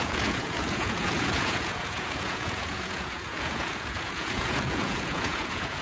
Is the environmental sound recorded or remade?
remade